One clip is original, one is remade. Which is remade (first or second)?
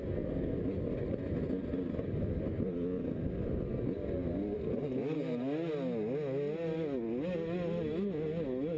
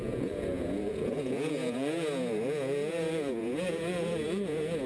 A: second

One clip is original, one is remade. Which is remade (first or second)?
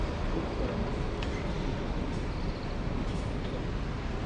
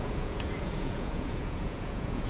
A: second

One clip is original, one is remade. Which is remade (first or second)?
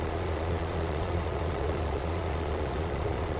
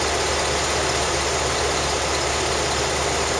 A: first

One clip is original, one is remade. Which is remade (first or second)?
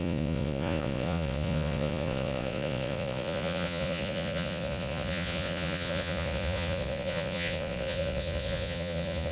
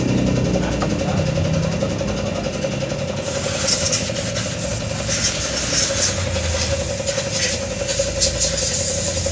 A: first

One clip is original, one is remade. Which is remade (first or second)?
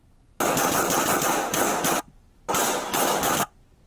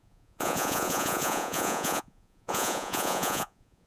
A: second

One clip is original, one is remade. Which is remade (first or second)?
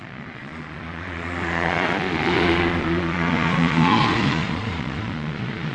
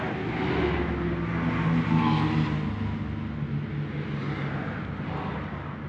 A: first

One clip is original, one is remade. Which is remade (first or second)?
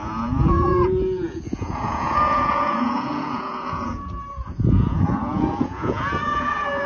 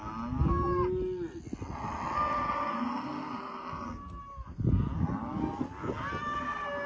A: first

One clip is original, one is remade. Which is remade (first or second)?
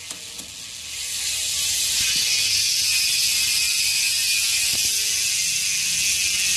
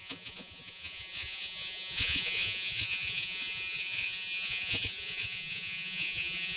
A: second